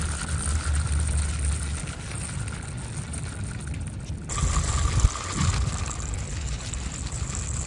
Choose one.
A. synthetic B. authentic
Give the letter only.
B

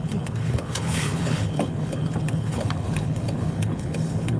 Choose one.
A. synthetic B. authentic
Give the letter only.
A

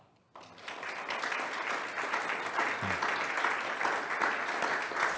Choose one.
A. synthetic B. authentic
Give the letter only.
B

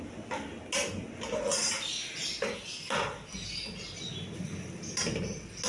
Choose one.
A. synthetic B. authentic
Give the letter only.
B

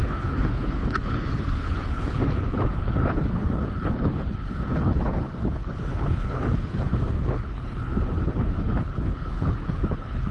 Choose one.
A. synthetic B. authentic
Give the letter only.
A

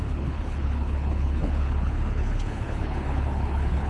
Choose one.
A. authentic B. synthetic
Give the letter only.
B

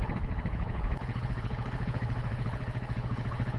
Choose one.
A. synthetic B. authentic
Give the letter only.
A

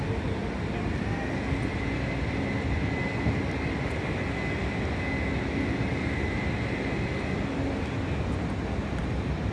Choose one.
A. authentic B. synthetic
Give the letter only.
A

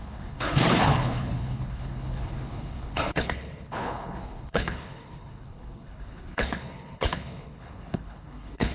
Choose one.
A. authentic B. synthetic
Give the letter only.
B